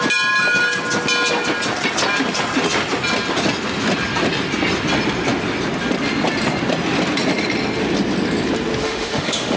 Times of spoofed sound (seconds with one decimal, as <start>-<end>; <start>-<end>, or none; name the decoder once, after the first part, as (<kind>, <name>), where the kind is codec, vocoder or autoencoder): 8.8-9.6 (autoencoder, DAC-VAE)